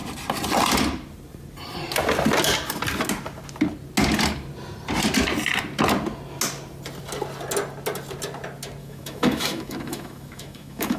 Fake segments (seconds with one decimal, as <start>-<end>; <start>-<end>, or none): 8.8-11.0